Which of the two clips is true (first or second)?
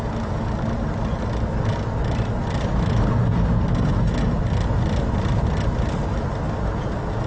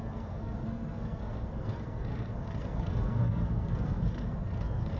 first